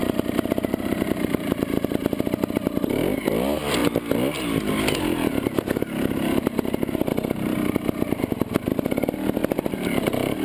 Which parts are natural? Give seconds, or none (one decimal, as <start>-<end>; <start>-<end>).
3.3-10.4